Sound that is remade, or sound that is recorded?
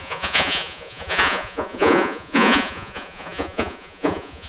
remade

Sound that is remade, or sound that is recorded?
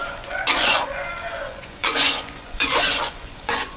remade